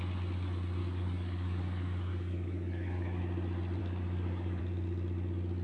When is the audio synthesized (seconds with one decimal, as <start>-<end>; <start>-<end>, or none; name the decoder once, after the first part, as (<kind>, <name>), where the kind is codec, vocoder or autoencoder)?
0.8-3.2 (codec, DAC); 3.8-4.6